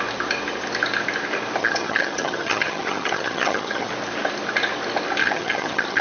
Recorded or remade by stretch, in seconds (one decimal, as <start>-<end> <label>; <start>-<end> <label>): 0.0-1.6 recorded; 1.6-3.9 remade; 3.9-5.2 recorded; 5.2-6.0 remade